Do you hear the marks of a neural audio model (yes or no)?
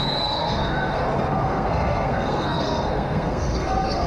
yes